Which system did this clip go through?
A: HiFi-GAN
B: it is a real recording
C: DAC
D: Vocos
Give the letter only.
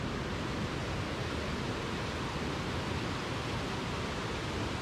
B